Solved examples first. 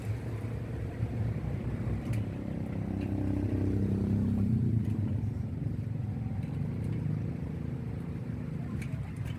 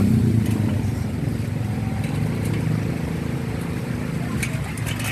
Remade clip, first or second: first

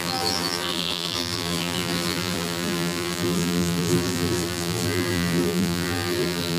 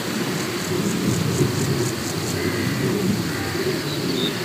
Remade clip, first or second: first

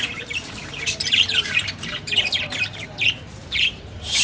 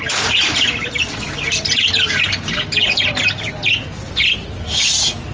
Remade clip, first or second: first